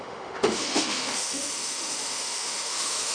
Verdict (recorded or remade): remade